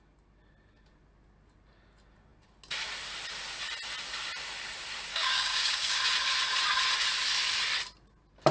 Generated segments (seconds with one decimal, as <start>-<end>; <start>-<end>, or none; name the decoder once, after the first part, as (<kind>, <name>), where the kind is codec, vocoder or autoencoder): 5.1-6.0 (codec, DAC)